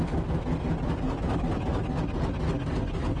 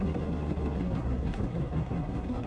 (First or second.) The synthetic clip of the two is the second